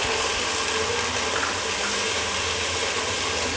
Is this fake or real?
real